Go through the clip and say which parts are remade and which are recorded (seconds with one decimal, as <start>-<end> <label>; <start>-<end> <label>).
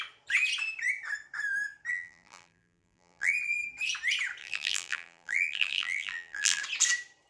0.0-1.9 recorded; 1.9-3.3 remade; 3.3-4.4 recorded; 4.4-6.6 remade; 6.6-7.3 recorded